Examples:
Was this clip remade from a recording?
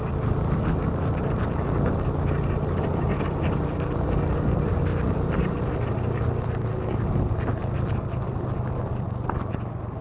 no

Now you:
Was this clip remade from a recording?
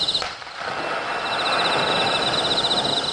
no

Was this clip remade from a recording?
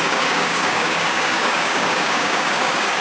yes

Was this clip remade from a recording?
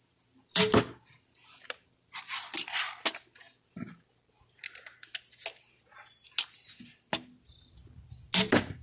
no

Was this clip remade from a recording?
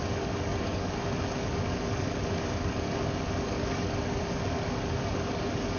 yes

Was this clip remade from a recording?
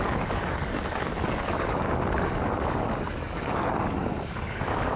yes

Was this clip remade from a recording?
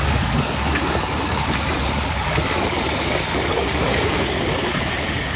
yes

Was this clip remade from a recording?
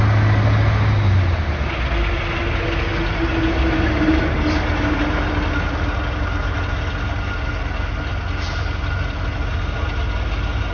no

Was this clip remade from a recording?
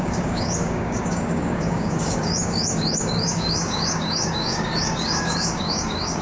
yes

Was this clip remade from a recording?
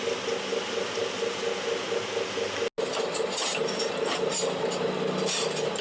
no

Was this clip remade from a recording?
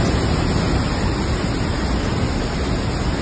no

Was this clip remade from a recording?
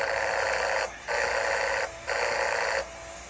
no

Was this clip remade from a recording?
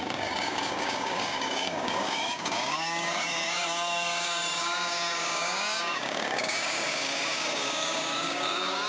yes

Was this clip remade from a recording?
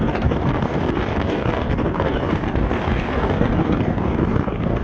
yes